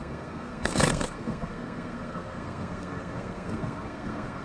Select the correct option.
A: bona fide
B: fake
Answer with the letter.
B